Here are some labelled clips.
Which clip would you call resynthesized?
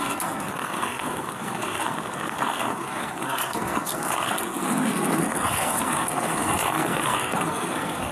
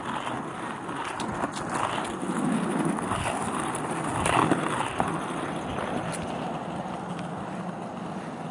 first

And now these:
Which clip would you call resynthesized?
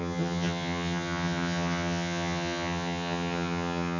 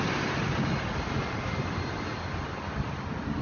first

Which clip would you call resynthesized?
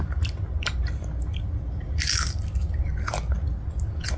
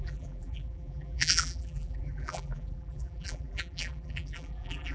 second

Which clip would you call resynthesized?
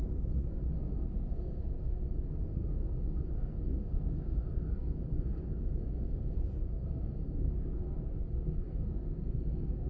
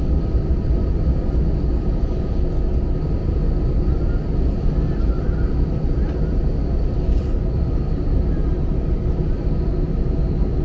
first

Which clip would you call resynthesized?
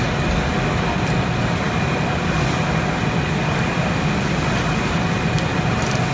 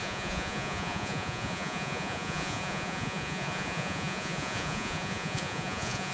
second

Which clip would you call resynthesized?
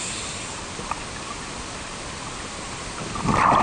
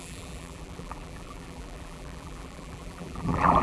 second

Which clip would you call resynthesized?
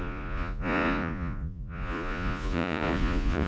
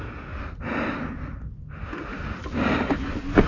first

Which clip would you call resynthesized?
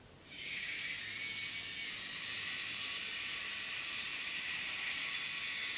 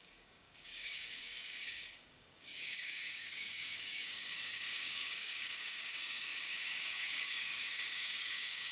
second